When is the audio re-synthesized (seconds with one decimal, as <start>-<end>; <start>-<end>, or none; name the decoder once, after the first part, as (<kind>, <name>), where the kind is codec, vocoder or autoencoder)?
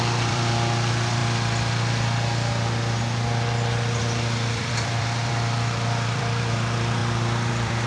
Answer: 0.0-1.2 (vocoder, BigVGAN v2); 4.0-7.0; 7.5-7.9